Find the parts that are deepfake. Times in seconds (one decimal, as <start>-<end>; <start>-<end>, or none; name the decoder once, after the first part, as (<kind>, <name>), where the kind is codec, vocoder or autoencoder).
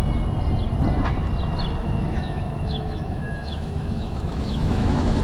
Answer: 1.8-5.2 (autoencoder, DAC-VAE)